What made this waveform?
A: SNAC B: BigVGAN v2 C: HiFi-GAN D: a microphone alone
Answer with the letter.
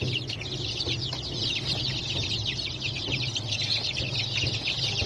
D